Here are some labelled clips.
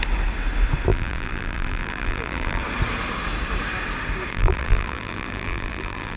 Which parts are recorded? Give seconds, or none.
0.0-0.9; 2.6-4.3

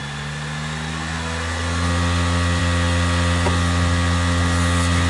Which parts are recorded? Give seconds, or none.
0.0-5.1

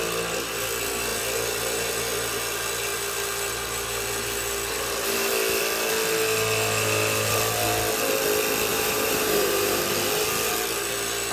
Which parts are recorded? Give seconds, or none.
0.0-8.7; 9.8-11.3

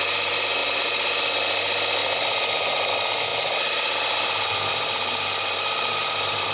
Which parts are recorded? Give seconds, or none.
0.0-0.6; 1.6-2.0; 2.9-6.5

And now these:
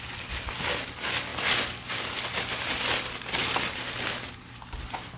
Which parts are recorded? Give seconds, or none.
0.0-5.2